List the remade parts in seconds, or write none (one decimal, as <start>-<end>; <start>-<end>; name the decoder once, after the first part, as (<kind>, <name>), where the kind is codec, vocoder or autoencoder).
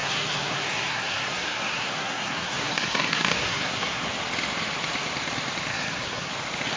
0.0-4.1 (codec, SNAC); 5.7-6.3